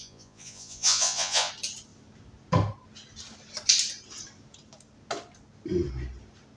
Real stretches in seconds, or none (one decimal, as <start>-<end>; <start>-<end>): 1.5-6.6